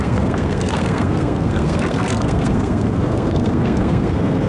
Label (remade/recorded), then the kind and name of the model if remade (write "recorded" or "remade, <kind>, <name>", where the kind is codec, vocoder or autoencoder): remade, codec, SNAC